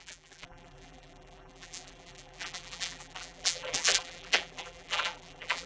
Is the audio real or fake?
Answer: fake